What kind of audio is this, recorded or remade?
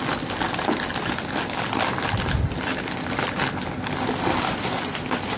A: recorded